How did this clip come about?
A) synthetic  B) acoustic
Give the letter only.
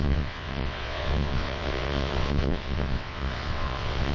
A